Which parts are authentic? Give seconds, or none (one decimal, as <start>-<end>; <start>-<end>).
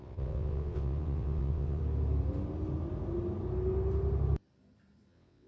1.8-5.1